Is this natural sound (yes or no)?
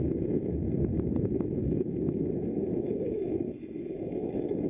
no